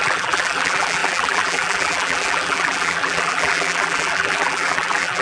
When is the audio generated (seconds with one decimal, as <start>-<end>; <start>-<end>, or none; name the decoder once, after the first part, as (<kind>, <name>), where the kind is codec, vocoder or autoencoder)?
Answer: 0.0-5.2 (vocoder, BigVGAN v2)